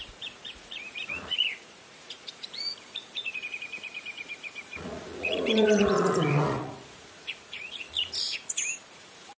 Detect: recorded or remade remade